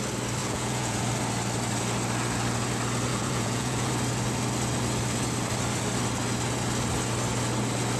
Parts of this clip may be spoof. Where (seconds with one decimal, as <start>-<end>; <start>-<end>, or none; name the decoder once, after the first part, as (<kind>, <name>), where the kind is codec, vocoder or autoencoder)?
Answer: 0.4-1.0 (vocoder, Vocos); 3.1-3.9